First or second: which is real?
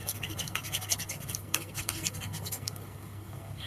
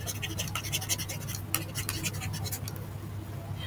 second